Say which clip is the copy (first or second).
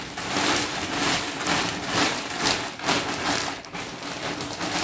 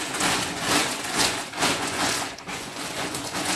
second